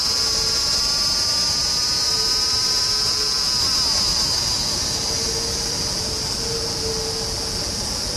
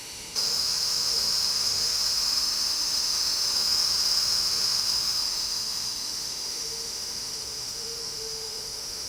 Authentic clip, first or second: first